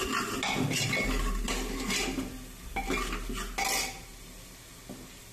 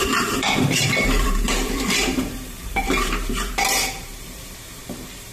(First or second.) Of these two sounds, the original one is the first